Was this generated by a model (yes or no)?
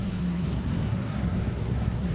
yes